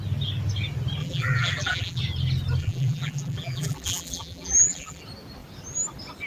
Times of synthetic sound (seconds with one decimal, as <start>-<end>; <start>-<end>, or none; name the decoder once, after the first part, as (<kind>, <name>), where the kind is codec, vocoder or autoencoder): 1.0-2.0 (vocoder, BigVGAN v2); 2.6-5.0